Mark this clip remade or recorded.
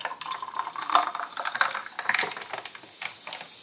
recorded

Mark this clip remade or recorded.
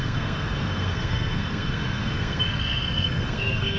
remade